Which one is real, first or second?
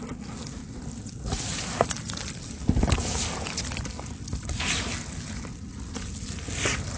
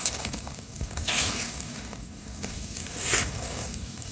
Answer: first